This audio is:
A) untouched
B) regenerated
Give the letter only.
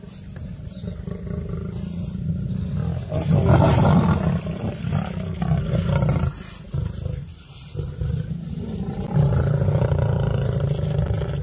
A